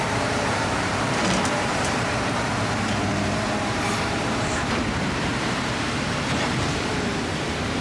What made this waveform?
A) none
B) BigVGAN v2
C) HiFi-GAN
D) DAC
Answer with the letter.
B